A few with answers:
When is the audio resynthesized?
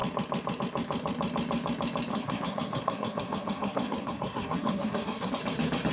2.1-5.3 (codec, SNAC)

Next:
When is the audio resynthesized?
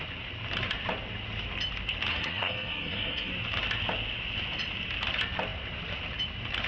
2.1-3.3 (codec, SNAC)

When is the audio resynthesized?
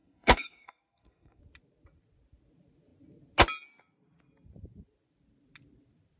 0.0-1.4 (codec, SNAC)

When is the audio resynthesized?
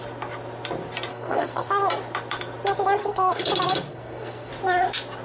1.1-1.7 (codec, SNAC); 3.0-3.5; 3.9-4.5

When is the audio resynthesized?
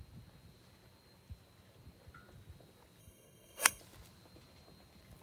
3.0-3.8 (codec, SNAC)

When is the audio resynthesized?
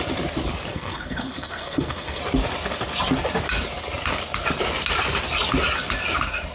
0.7-2.2 (codec, SNAC)